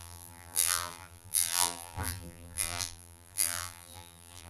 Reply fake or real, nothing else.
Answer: fake